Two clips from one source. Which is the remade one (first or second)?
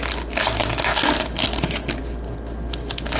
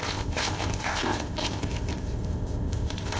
second